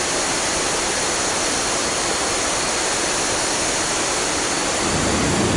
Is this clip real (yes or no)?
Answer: yes